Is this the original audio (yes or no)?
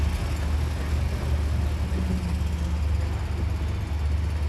yes